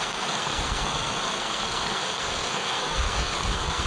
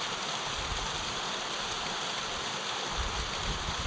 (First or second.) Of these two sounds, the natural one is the second